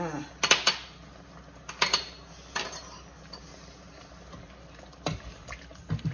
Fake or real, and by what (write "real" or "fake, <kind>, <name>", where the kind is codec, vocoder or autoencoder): real